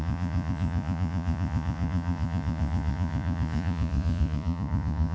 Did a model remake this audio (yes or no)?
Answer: yes